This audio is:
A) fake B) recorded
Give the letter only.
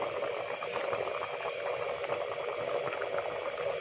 B